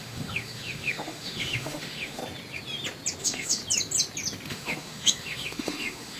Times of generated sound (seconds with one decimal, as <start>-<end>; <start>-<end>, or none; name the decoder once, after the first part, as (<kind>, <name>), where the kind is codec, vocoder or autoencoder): 0.0-2.2 (autoencoder, DAC-VAE); 3.2-3.6; 4.5-6.2